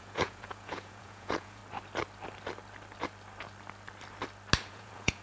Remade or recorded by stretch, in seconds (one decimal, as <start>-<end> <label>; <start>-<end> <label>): 0.0-1.6 remade; 1.6-4.7 recorded; 4.7-5.2 remade